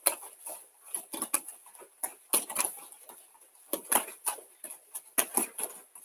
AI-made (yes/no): no